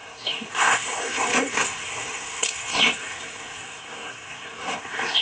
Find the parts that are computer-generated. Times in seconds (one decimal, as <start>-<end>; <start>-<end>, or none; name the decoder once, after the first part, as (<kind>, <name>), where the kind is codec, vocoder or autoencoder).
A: 0.0-5.2 (codec, SNAC)